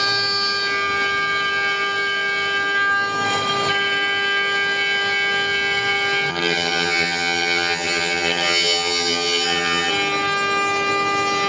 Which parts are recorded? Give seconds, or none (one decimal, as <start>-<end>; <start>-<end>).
0.0-6.3; 9.9-11.5